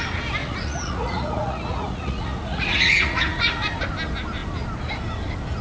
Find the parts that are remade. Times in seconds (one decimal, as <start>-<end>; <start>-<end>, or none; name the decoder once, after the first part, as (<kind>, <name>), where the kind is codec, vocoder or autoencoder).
0.4-3.8 (vocoder, Vocos)